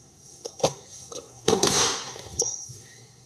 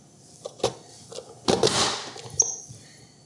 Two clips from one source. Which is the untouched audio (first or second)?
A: second